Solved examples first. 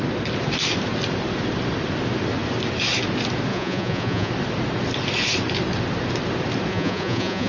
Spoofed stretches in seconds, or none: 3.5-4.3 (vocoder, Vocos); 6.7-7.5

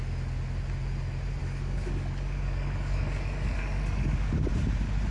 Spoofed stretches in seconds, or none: 1.4-4.5 (codec, DAC)

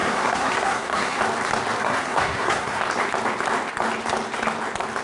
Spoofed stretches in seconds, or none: 0.0-1.2 (codec, SNAC); 1.8-2.8

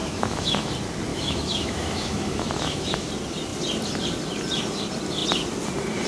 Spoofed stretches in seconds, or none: 0.0-0.7 (autoencoder, DAC-VAE); 1.1-3.1